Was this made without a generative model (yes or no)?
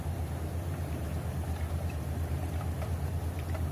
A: no